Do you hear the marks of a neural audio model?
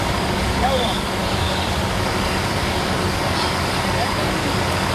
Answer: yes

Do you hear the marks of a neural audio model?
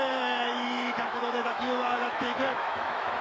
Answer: yes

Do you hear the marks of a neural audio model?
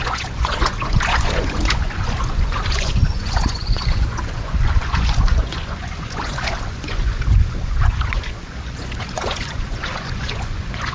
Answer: yes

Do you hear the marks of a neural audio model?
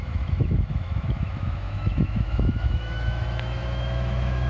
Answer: yes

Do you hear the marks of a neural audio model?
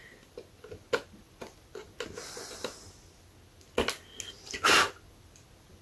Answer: no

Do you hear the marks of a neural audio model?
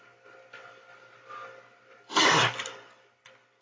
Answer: no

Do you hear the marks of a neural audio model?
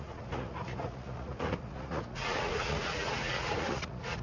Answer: yes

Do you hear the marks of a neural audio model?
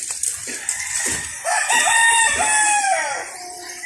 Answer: no